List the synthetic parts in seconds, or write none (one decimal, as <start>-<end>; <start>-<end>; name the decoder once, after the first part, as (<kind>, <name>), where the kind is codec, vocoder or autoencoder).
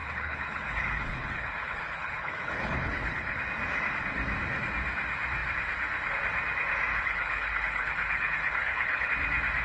0.0-3.4 (codec, HILCodec); 6.9-9.1